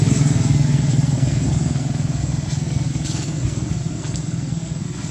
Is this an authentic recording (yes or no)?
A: no